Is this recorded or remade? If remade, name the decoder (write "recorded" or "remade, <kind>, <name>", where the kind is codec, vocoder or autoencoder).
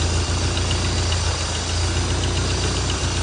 recorded